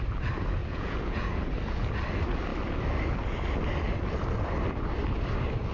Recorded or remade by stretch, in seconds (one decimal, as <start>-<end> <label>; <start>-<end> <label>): 0.0-0.6 recorded; 0.6-1.4 remade; 1.4-5.7 recorded